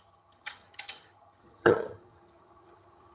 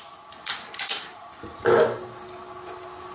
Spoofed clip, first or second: first